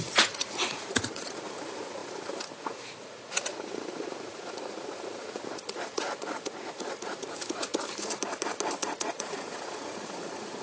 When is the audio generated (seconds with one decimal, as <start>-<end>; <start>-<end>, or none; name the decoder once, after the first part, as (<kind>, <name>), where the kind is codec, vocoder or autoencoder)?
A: 0.0-7.7 (vocoder, Vocos); 8.9-10.6